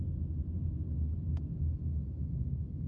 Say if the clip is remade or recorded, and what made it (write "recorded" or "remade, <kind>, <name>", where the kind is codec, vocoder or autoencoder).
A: recorded